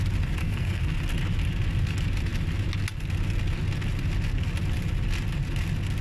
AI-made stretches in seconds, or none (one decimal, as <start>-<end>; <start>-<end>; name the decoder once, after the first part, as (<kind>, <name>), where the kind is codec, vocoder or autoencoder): 0.4-1.0 (codec, SNAC)